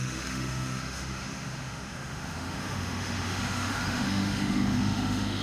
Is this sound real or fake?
fake